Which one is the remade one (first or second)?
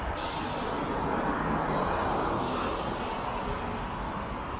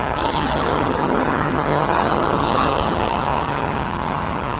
second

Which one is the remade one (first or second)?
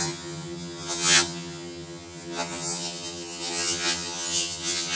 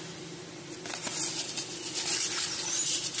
first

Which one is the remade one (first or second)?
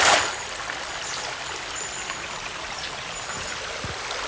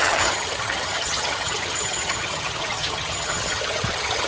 second